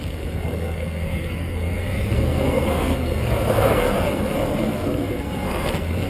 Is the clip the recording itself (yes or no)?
no